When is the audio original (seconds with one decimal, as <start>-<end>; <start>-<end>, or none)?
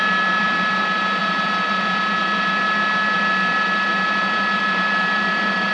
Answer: 0.0-5.7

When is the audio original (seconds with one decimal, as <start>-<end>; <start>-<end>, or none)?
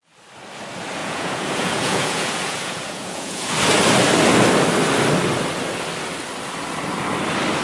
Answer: 0.0-1.0; 3.5-7.6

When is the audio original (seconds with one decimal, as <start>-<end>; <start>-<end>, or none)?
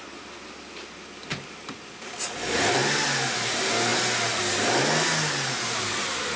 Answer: 0.0-6.4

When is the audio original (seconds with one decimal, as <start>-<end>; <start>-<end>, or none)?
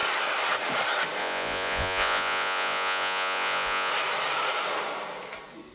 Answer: 0.0-1.2; 3.9-5.7